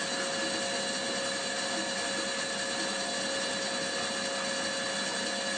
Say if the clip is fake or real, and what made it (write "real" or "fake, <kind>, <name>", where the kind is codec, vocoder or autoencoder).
real